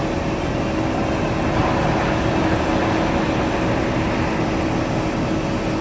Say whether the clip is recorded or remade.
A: recorded